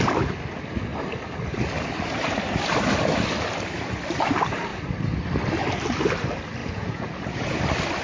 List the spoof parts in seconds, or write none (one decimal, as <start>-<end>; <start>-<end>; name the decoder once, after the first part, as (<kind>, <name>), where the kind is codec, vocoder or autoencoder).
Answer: 6.6-7.6 (vocoder, Vocos)